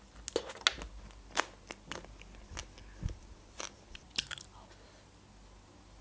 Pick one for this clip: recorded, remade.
recorded